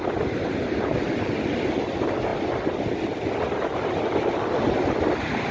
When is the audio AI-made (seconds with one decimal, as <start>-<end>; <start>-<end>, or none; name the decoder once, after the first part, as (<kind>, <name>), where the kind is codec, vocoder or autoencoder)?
none